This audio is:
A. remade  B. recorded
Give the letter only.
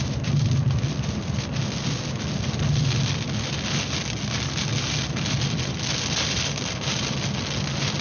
B